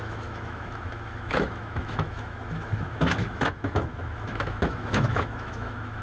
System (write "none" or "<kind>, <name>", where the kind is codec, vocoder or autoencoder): autoencoder, DAC-VAE